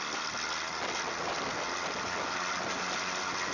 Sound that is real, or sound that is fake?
real